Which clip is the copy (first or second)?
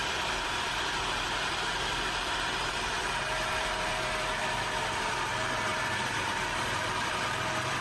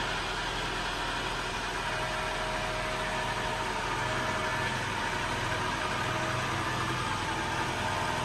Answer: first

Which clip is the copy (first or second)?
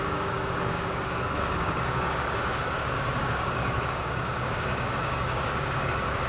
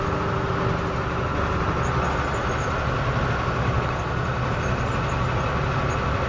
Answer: first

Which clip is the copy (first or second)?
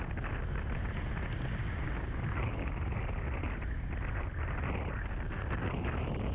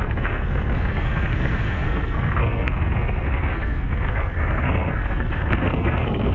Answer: second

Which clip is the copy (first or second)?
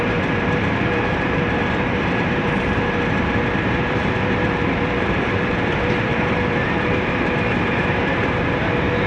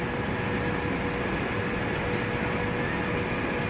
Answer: first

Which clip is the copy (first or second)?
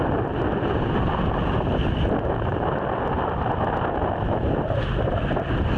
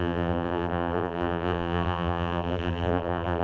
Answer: second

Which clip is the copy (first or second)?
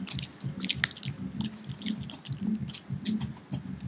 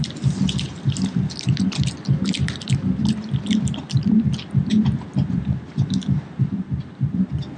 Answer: second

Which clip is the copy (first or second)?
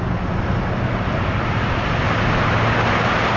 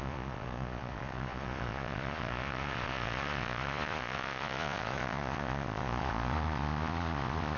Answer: second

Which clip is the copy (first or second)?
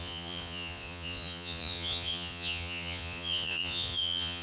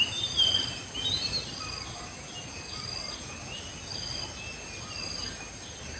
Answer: first